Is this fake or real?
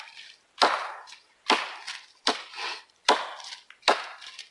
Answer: real